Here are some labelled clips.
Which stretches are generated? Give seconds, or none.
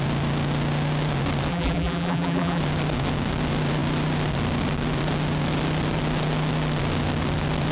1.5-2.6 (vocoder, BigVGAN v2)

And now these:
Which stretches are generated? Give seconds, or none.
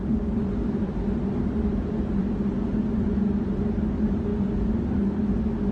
0.0-2.5 (vocoder, BigVGAN v2); 4.3-5.0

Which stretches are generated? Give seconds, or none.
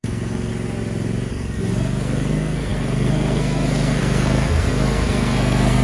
0.0-0.5 (codec, SNAC); 1.3-5.8